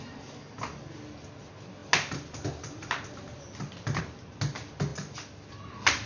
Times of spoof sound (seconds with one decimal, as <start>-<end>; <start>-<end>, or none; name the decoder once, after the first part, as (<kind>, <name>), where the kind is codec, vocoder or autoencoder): none